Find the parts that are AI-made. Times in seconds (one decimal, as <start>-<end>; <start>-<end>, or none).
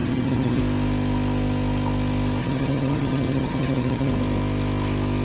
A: 0.0-0.6; 2.4-4.1